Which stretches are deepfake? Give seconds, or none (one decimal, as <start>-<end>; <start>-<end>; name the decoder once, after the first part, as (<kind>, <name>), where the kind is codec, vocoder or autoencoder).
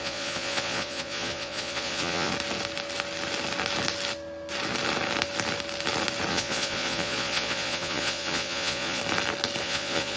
0.0-2.3 (vocoder, Vocos); 6.3-9.0; 9.6-10.2